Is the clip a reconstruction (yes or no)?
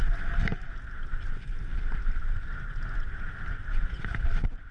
no